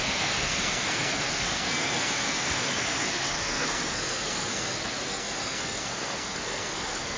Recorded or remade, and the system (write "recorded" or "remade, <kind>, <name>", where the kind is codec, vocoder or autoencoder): remade, codec, SNAC